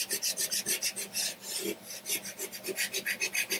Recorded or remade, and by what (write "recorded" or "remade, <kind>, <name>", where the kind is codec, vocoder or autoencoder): recorded